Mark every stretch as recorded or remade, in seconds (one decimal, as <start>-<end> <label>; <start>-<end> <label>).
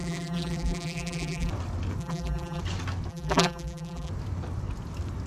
0.0-1.5 remade; 1.5-2.0 recorded; 2.0-2.6 remade; 2.6-3.1 recorded; 3.1-4.1 remade; 4.1-5.3 recorded